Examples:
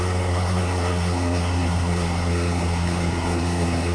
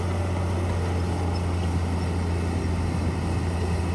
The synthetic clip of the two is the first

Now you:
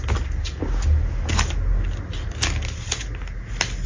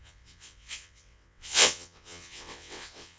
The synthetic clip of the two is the second